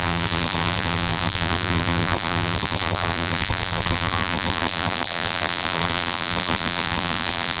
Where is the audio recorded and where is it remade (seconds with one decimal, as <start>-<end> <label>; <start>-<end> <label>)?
0.0-7.6 remade

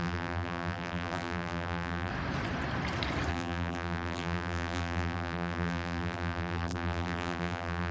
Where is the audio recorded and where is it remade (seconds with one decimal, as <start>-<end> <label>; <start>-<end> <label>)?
0.0-2.1 remade; 2.1-3.3 recorded; 3.3-7.9 remade

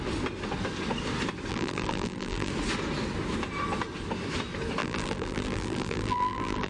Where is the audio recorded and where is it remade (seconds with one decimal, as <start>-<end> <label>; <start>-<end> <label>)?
0.0-1.5 recorded; 1.5-2.5 remade; 2.5-4.8 recorded; 4.8-6.7 remade

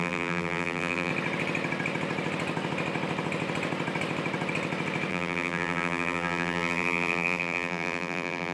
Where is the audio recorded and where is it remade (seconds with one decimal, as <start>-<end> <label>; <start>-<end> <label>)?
0.0-1.1 remade; 1.1-5.1 recorded; 5.1-8.5 remade

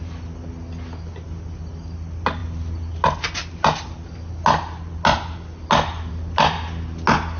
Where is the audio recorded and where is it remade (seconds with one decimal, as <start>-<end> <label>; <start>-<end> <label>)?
0.0-7.4 recorded

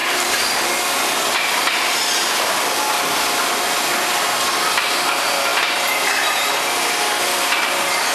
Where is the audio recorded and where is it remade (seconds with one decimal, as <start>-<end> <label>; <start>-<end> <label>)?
0.0-0.7 remade; 0.7-5.5 recorded; 5.5-6.5 remade; 6.5-8.1 recorded

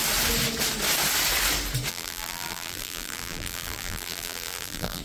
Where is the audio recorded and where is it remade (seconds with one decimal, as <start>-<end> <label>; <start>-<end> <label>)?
0.0-1.9 recorded; 1.9-5.0 remade

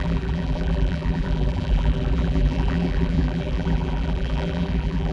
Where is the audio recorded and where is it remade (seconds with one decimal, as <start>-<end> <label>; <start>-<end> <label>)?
0.0-5.1 remade